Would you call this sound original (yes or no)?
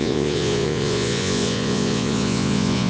no